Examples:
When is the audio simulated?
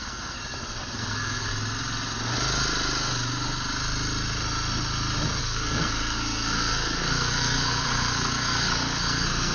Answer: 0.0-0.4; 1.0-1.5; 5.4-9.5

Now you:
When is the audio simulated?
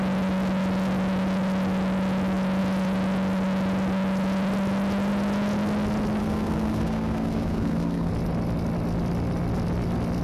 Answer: 6.2-8.1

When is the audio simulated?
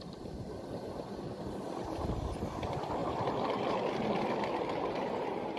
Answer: none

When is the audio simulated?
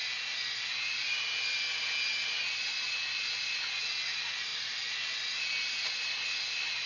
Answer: none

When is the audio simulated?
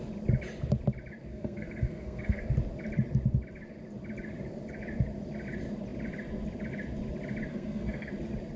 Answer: 1.3-2.4; 7.5-8.1